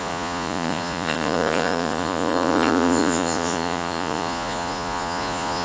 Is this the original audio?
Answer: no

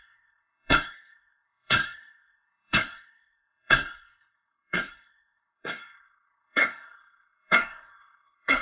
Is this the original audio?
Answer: no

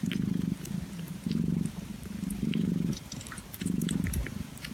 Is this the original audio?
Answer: no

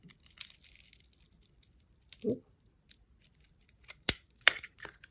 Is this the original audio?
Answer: no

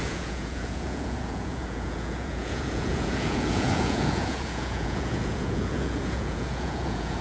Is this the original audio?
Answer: no